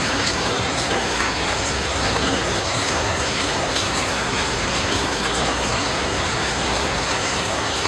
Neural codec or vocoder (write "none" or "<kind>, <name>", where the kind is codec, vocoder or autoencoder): codec, SNAC